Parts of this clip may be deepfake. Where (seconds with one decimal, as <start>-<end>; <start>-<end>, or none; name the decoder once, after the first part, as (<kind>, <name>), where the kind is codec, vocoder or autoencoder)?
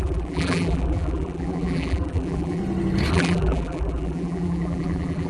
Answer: 0.0-2.6 (vocoder, BigVGAN v2); 3.1-5.3